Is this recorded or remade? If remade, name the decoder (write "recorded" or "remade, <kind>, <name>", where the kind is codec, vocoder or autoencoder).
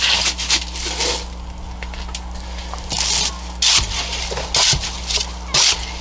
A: recorded